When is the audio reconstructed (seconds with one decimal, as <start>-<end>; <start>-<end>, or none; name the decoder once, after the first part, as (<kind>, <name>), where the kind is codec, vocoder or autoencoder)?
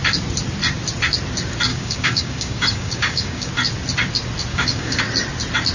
1.7-3.5 (codec, DAC); 4.5-5.0